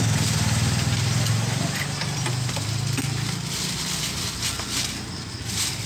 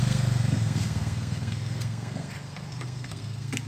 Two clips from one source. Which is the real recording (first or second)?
first